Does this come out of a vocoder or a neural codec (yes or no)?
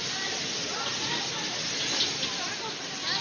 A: no